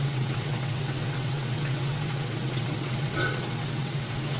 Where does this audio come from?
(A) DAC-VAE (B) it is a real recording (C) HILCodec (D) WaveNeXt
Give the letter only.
D